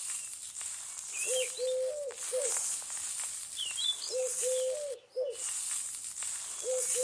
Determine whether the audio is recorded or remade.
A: recorded